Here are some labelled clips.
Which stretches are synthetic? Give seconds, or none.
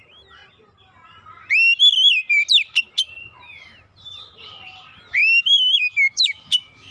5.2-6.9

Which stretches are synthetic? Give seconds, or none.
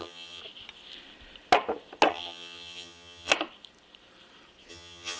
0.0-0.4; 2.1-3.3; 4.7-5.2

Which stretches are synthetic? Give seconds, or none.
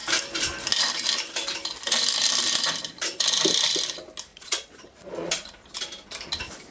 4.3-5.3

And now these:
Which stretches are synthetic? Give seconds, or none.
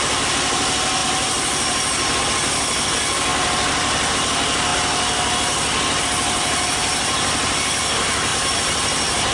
1.0-2.2; 8.3-9.3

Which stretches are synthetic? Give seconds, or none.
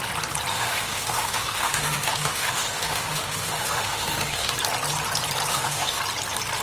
0.5-4.5; 5.5-6.0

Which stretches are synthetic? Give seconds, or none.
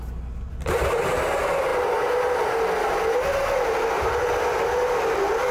none